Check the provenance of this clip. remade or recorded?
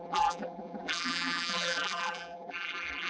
remade